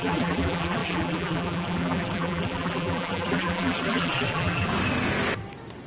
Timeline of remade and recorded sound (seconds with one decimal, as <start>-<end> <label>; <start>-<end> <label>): 0.0-4.7 remade; 4.7-5.9 recorded